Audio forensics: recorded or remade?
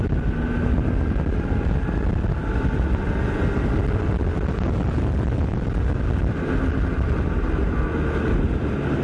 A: recorded